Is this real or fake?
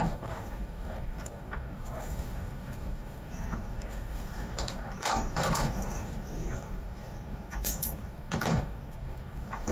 fake